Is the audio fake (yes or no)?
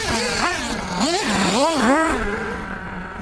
yes